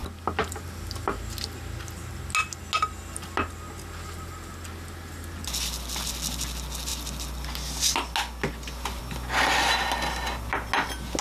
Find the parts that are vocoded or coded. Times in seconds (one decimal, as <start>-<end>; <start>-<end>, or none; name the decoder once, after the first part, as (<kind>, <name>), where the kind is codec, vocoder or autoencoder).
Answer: none